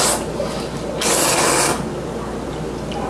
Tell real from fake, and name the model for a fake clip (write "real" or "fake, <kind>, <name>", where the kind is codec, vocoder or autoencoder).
real